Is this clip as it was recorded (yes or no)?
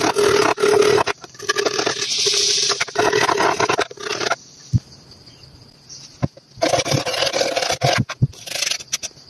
yes